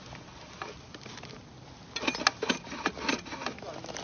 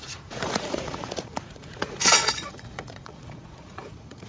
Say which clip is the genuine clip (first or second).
first